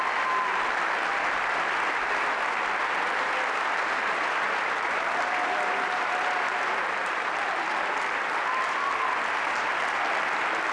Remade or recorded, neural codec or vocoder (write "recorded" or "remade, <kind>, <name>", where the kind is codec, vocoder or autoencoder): recorded